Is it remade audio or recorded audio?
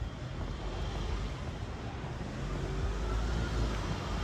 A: recorded